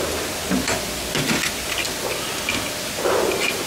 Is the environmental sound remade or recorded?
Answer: recorded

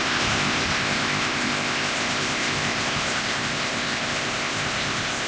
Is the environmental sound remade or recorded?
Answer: remade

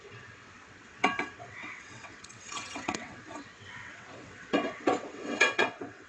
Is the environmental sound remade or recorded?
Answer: remade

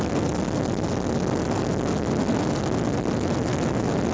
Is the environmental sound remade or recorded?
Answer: recorded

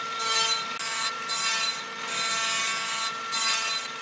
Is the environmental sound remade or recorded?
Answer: recorded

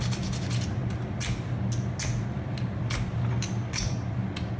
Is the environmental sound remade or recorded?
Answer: recorded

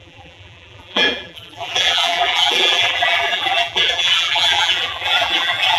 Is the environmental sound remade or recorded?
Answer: remade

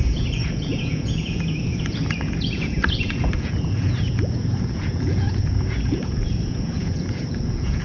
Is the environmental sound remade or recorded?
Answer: remade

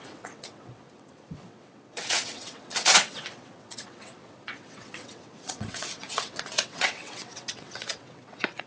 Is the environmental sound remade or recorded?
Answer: remade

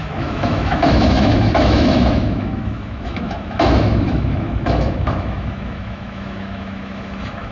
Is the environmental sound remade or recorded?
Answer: remade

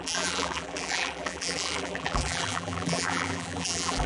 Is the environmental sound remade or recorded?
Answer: remade